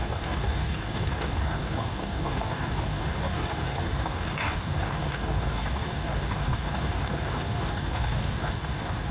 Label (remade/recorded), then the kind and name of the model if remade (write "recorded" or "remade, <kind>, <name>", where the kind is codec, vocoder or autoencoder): remade, codec, DAC